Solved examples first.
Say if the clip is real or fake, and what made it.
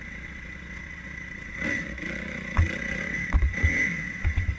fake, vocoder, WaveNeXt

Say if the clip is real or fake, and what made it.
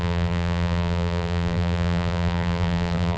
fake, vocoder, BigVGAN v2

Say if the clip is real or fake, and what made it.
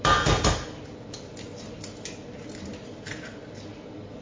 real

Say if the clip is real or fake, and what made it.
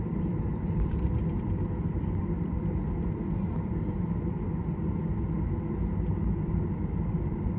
fake, vocoder, BigVGAN v2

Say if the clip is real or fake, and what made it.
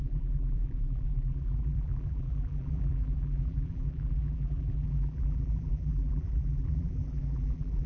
fake, vocoder, BigVGAN v2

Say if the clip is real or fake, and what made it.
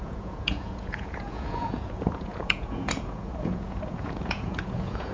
fake, vocoder, Vocos